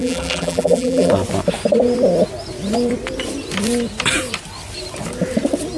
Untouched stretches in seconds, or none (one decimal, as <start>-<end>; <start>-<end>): 1.1-5.8